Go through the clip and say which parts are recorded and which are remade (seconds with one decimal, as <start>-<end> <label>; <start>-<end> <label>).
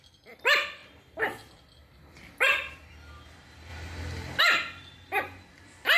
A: 0.0-3.7 remade; 3.7-4.4 recorded; 4.4-6.0 remade